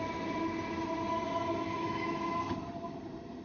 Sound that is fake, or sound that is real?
real